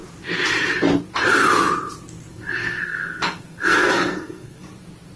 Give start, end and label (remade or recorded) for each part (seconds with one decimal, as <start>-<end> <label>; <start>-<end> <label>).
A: 0.0-2.3 recorded; 2.3-4.7 remade; 4.7-5.2 recorded